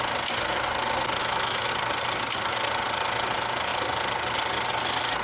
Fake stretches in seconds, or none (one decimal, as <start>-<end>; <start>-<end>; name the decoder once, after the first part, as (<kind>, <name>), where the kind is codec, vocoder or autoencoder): 1.2-1.7 (autoencoder, DAC-VAE)